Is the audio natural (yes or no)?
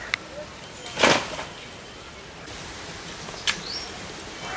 yes